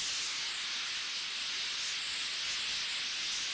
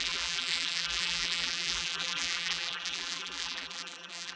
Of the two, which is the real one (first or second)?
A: first